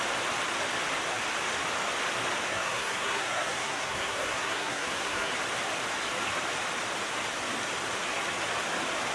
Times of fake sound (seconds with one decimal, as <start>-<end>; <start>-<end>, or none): 2.5-5.3